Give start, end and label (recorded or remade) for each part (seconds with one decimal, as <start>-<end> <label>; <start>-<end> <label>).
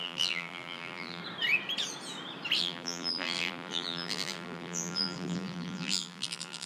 0.0-1.2 remade; 1.2-2.6 recorded; 2.6-6.7 remade